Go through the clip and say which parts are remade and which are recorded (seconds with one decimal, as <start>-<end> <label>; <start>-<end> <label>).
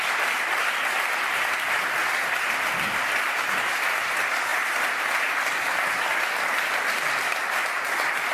0.0-4.5 remade; 4.5-5.3 recorded; 5.3-8.3 remade